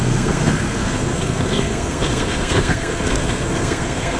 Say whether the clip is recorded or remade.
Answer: remade